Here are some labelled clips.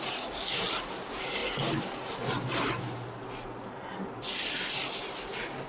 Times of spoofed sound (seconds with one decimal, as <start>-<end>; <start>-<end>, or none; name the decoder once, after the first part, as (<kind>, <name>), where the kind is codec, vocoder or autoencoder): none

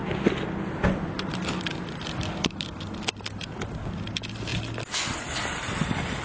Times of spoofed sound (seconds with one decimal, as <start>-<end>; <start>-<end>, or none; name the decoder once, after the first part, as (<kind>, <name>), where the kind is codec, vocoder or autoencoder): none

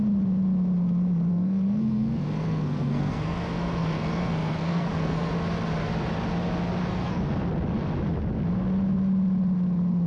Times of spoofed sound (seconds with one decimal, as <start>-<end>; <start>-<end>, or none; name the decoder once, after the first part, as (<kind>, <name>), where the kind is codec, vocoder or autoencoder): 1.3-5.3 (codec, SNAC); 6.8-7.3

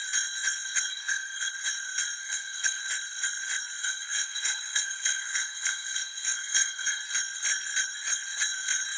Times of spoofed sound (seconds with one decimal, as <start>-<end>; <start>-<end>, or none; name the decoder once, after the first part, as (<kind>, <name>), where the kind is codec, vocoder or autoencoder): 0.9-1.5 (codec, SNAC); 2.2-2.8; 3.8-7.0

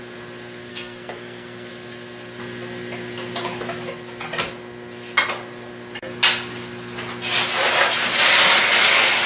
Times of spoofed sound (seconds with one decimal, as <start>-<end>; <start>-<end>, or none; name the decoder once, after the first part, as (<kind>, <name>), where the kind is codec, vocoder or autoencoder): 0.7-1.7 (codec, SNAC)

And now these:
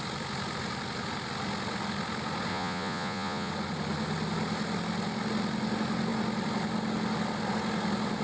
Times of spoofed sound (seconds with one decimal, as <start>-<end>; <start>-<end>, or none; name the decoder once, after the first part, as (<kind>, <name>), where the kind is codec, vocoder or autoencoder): 2.5-3.5 (vocoder, Vocos)

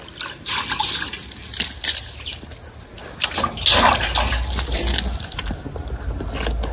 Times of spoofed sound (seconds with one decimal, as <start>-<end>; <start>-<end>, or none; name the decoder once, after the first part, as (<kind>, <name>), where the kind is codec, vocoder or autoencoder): none